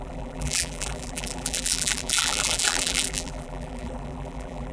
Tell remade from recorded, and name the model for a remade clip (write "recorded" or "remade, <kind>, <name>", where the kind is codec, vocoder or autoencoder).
remade, vocoder, BigVGAN v2